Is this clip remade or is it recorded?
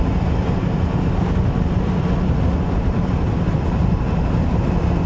recorded